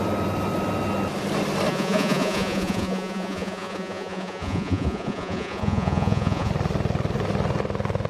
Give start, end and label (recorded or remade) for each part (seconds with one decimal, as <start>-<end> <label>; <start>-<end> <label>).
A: 0.0-1.7 recorded; 1.7-6.5 remade; 6.5-8.1 recorded